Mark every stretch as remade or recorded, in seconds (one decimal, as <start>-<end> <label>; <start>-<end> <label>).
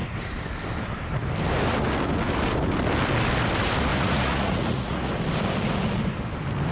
0.0-3.9 recorded; 3.9-5.1 remade; 5.1-6.7 recorded